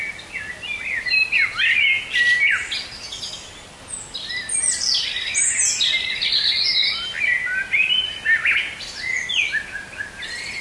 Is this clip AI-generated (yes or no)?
no